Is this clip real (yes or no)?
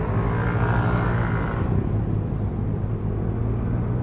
yes